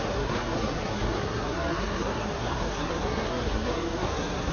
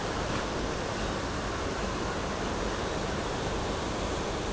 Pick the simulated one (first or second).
first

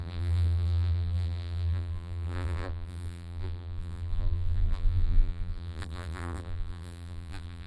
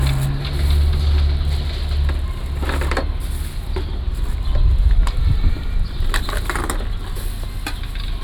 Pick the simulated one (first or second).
first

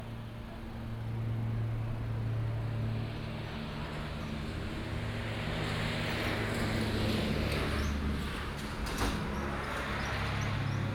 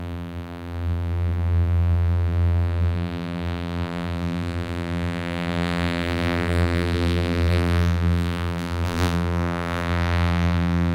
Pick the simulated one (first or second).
second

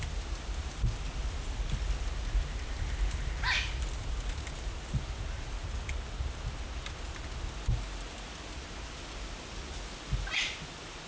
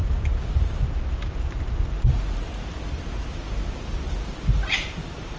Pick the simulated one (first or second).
second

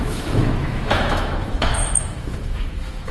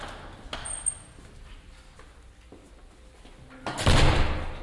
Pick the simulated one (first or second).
first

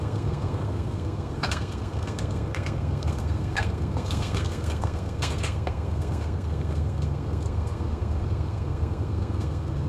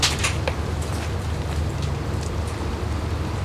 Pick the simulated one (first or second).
first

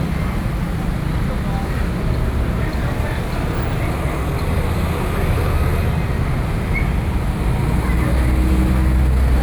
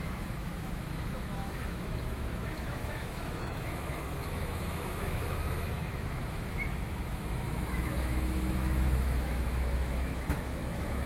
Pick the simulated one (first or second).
second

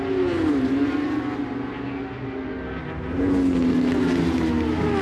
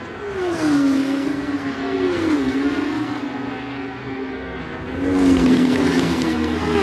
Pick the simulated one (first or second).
second